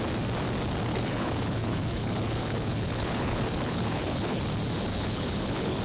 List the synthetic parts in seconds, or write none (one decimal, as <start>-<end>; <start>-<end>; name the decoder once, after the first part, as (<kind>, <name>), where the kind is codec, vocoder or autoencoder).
0.9-4.4 (codec, HILCodec); 4.9-5.8